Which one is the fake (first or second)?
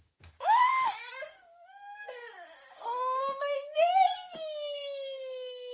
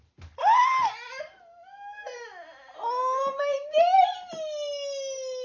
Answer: first